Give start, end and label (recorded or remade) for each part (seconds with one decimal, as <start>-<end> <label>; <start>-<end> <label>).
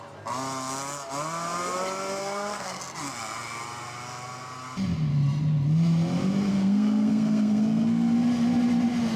0.0-2.2 recorded; 2.2-2.8 remade; 2.8-6.5 recorded; 6.5-8.1 remade; 8.1-9.2 recorded